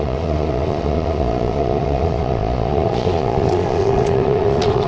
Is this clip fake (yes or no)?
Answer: yes